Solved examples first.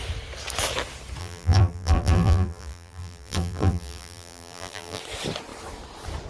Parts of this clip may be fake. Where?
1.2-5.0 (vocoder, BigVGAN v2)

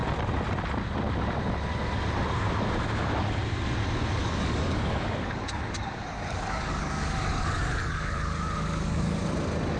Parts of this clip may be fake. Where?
4.2-9.2 (codec, DAC)

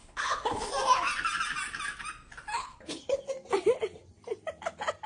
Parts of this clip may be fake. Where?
0.0-0.7 (codec, HILCodec); 2.6-3.2

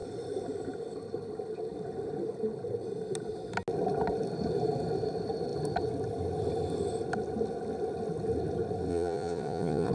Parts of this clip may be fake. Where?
8.9-9.9 (vocoder, Vocos)